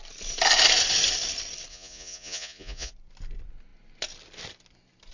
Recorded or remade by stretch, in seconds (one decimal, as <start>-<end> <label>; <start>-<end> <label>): 0.0-1.7 recorded; 1.7-2.9 remade; 2.9-5.1 recorded